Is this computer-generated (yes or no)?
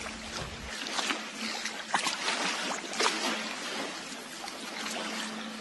no